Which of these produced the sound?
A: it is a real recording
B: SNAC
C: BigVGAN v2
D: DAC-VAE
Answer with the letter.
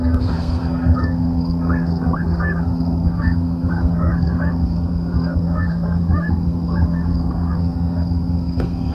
B